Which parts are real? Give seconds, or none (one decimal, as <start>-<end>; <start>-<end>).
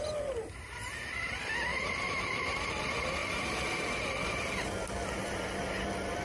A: 0.0-1.7; 2.8-6.2